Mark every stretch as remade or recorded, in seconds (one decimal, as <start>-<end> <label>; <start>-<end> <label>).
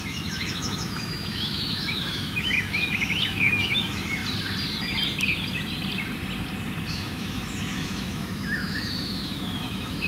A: 0.0-4.2 remade; 4.2-6.9 recorded; 6.9-10.1 remade